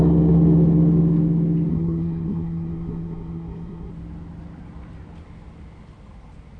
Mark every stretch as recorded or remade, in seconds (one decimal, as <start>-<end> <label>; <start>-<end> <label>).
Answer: 0.0-1.7 recorded; 1.7-3.9 remade; 3.9-6.6 recorded